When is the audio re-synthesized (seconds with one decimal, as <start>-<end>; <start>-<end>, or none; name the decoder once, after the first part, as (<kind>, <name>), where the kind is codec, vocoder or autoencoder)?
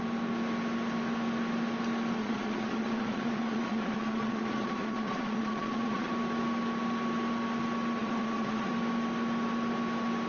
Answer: 2.2-6.1 (vocoder, Vocos); 8.0-8.7